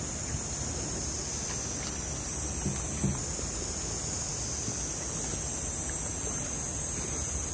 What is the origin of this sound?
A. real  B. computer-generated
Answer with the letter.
A